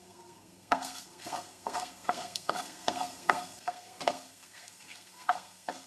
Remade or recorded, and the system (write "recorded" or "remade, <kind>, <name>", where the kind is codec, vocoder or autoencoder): remade, codec, SNAC